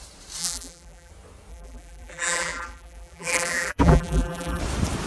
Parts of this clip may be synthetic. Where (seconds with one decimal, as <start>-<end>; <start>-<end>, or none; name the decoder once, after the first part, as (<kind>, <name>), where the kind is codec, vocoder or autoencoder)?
0.4-1.1 (vocoder, BigVGAN v2); 1.5-4.6